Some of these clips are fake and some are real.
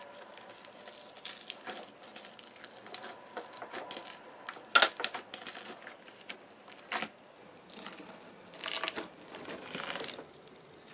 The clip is real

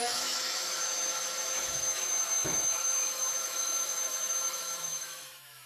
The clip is fake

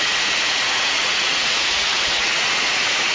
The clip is fake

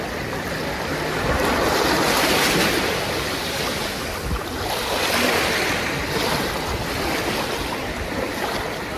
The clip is real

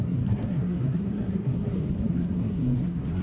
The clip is fake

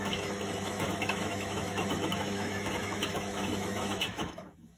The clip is fake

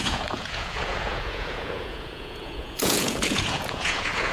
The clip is fake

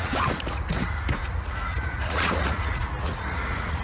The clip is fake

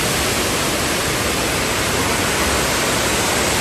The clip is real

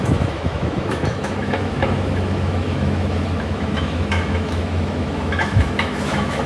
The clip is fake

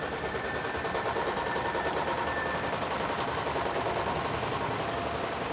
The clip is real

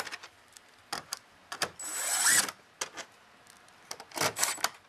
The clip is real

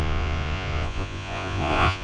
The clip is fake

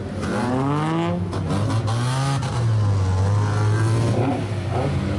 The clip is real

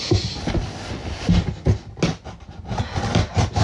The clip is real